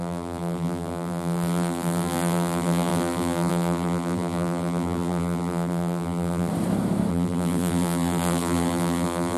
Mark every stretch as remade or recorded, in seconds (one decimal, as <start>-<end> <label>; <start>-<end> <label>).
0.0-6.5 remade; 6.5-7.1 recorded; 7.1-9.4 remade